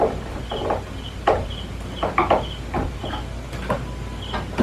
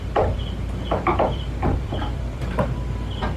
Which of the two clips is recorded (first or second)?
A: first